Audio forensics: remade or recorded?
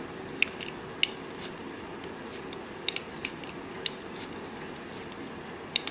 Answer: recorded